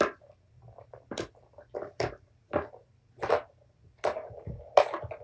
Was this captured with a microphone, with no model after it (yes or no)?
yes